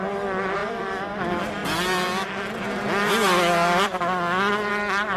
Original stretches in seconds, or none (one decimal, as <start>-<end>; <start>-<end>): 0.0-0.6; 1.1-5.2